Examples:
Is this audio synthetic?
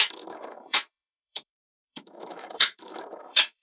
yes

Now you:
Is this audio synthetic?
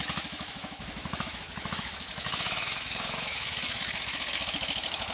yes